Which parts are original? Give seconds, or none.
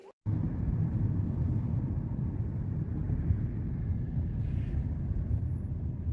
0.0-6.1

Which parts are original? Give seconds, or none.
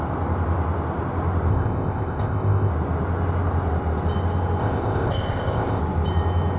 0.0-1.5; 2.7-4.6; 5.8-6.6